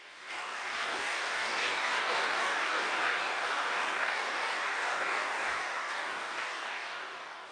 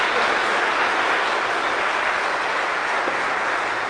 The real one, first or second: second